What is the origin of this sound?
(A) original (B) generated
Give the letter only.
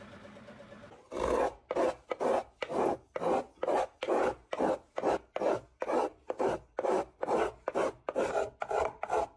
A